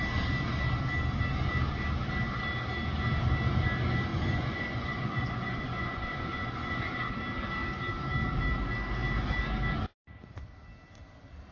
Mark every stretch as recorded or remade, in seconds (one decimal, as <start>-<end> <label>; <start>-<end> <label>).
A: 0.0-4.1 recorded; 4.1-7.1 remade; 7.1-11.5 recorded